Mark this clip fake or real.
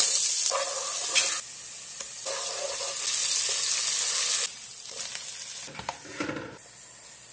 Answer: real